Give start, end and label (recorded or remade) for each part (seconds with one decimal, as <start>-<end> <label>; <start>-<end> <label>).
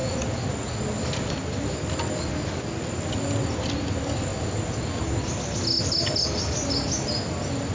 0.0-7.7 recorded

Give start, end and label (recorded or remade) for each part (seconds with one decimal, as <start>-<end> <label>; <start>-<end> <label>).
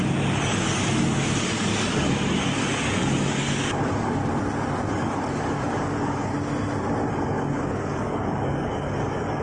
0.0-4.2 remade; 4.2-4.9 recorded; 4.9-6.3 remade; 6.3-7.1 recorded; 7.1-9.4 remade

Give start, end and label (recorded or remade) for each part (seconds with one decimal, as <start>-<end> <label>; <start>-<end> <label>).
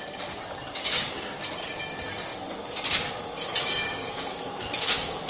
0.0-0.8 recorded; 0.8-1.4 remade; 1.4-3.6 recorded; 3.6-5.3 remade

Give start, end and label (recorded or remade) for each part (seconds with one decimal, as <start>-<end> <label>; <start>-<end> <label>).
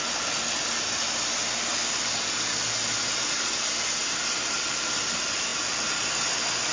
0.0-6.7 recorded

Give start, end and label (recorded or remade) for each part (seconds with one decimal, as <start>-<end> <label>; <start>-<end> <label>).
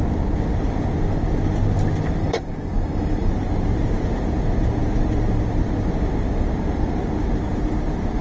0.0-2.2 recorded; 2.2-3.3 remade; 3.3-8.2 recorded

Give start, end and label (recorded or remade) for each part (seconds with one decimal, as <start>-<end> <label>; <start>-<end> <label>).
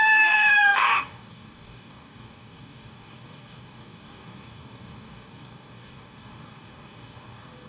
0.0-7.7 remade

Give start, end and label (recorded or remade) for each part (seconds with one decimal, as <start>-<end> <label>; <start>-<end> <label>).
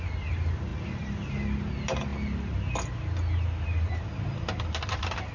0.0-5.3 recorded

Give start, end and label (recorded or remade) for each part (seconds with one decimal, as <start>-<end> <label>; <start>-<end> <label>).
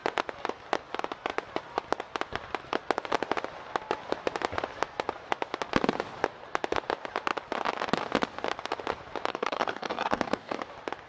0.0-9.3 recorded; 9.3-10.6 remade; 10.6-11.1 recorded